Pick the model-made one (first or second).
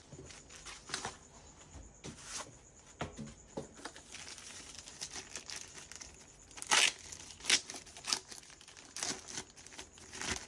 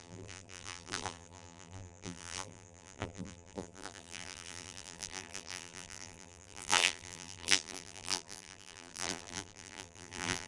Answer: second